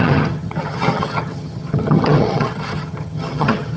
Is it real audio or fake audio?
fake